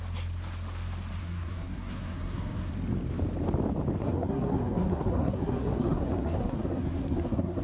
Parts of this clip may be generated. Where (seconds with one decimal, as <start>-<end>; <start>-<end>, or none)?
1.2-2.7; 4.0-7.6